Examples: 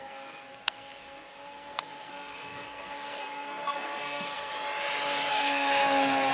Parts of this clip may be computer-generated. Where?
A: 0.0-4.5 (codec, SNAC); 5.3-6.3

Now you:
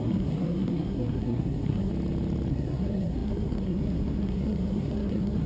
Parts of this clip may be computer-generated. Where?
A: 0.0-1.9 (codec, SNAC); 2.5-5.5